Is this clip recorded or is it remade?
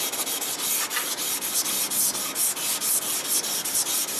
recorded